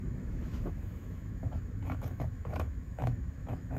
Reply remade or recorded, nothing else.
remade